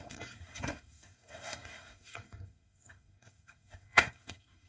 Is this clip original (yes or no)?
no